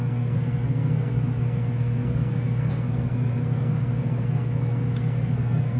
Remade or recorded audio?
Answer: remade